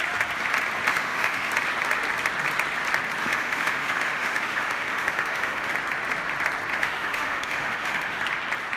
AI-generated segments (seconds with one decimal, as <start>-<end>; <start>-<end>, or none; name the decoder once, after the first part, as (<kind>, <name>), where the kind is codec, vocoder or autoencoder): 0.9-1.5 (autoencoder, DAC-VAE); 3.2-5.7; 6.7-8.2